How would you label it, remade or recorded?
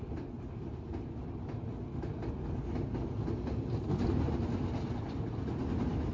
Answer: recorded